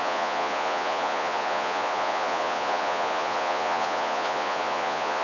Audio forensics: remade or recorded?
remade